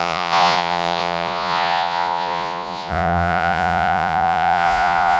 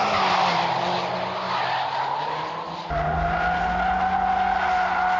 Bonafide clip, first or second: second